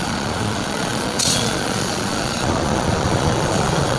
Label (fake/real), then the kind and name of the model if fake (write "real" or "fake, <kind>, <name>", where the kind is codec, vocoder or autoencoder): fake, vocoder, Vocos